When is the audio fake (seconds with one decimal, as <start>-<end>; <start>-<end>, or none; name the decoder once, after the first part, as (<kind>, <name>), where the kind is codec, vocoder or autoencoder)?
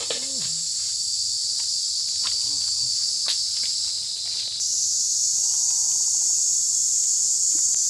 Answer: none